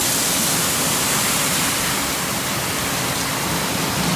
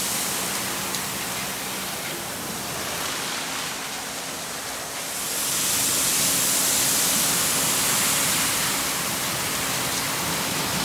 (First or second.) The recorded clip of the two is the second